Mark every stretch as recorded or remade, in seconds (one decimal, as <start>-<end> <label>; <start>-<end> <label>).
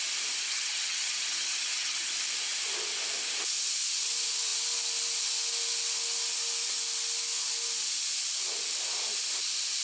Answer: 0.0-0.4 recorded; 0.4-2.1 remade; 2.1-9.8 recorded